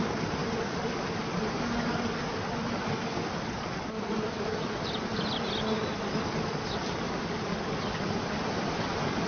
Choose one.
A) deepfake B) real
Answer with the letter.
B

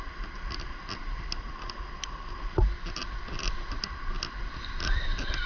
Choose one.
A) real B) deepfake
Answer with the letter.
A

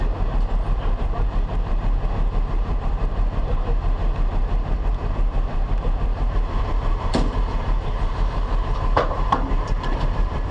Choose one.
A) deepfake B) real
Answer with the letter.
A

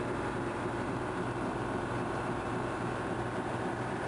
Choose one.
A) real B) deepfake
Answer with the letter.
B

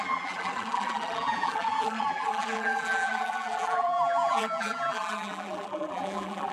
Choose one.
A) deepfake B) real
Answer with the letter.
A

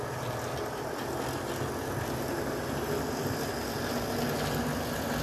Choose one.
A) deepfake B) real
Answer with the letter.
B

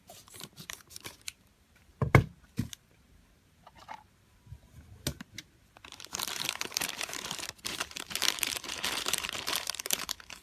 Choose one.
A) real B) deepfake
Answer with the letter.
B